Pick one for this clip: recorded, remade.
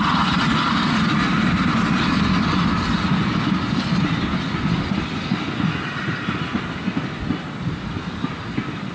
recorded